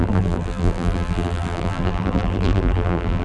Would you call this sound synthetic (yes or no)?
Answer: yes